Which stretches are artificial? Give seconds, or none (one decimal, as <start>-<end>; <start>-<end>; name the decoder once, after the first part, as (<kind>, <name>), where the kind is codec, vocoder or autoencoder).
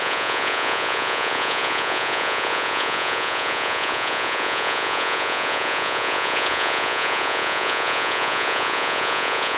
0.0-9.6 (vocoder, Vocos)